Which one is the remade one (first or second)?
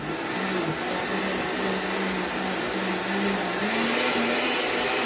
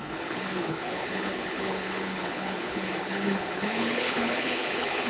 second